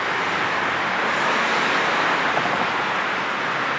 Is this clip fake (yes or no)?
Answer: no